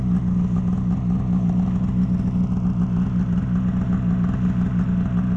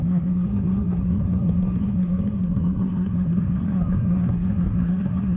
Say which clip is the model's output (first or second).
second